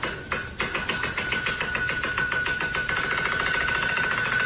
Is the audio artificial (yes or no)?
no